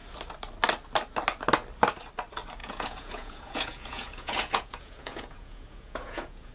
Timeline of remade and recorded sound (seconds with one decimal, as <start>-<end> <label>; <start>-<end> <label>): 0.0-2.6 recorded; 2.6-6.5 remade